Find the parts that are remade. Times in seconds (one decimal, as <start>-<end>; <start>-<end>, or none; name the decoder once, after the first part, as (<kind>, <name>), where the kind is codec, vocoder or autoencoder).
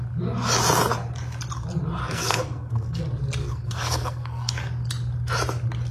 2.0-3.0 (codec, SNAC); 3.4-4.5